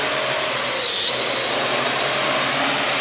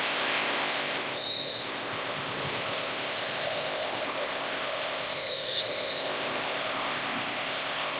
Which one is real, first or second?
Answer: first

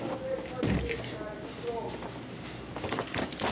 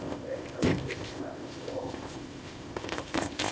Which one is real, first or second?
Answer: first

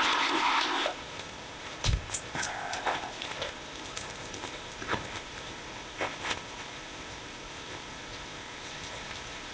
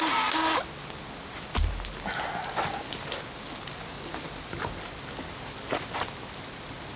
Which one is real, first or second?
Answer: second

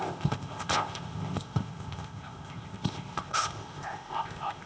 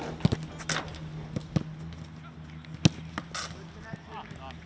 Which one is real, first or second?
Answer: second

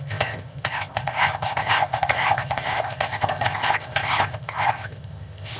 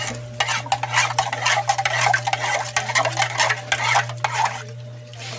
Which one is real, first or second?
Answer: second